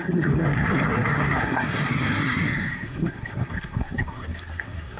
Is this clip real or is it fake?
fake